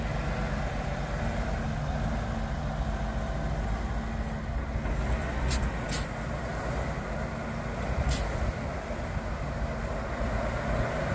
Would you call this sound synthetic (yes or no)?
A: no